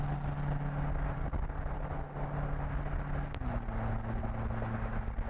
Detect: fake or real real